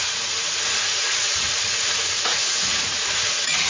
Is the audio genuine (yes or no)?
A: no